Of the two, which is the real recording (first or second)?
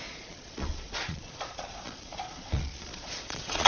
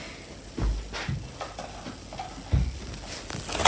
second